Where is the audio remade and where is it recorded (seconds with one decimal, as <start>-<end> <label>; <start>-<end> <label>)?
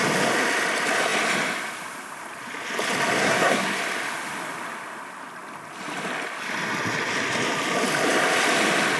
0.0-3.2 recorded; 3.2-3.8 remade; 3.8-9.0 recorded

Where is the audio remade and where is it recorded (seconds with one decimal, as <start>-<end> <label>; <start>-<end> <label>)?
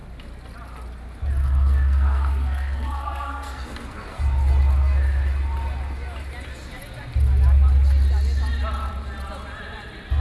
0.0-1.4 recorded; 1.4-4.2 remade; 4.2-10.2 recorded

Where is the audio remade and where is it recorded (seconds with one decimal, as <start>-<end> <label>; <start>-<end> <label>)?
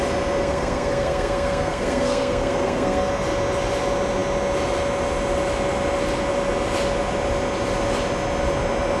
0.0-0.4 recorded; 0.4-3.1 remade; 3.1-9.0 recorded